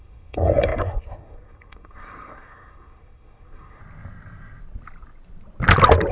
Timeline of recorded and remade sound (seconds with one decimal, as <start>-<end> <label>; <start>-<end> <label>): 0.0-3.8 remade; 3.8-6.1 recorded